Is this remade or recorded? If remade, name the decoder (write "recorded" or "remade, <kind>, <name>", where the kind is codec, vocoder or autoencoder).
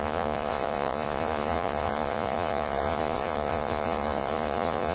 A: remade, vocoder, Vocos